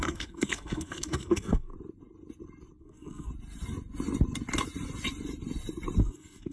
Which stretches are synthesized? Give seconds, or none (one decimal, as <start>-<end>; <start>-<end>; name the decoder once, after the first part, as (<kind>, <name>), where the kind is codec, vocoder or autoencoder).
0.0-1.7 (codec, SNAC); 2.8-3.3; 6.0-6.5